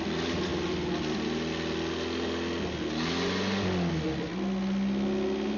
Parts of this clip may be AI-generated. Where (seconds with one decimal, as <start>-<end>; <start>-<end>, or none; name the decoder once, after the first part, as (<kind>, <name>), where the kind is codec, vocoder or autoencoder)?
none